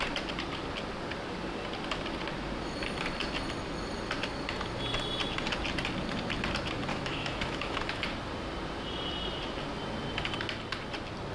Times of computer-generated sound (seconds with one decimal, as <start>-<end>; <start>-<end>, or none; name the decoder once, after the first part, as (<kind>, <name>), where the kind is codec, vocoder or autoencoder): 6.9-8.0 (autoencoder, DAC-VAE)